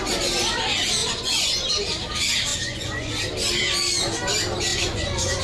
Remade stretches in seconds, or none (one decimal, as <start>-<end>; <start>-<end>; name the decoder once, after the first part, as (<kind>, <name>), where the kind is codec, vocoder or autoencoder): 1.0-1.7 (vocoder, Vocos); 2.5-3.1; 4.7-5.4